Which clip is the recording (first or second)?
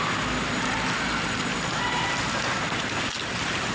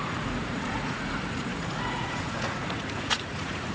first